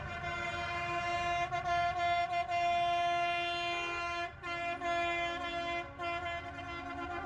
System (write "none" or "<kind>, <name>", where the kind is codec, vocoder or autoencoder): none